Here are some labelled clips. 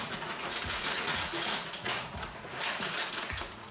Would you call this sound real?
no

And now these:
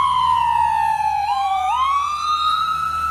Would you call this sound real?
no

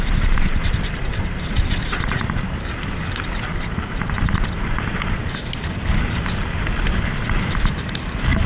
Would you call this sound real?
yes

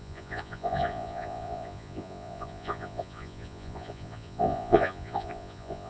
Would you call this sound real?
no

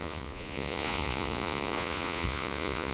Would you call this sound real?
no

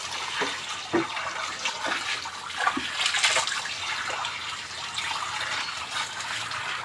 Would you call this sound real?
yes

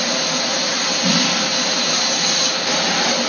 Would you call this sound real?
yes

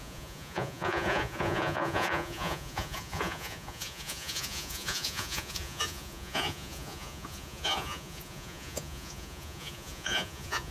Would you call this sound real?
no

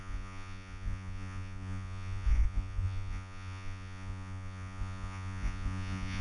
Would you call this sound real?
no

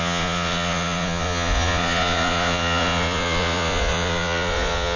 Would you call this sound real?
no